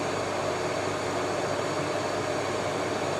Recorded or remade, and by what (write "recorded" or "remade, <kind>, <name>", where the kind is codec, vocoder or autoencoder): recorded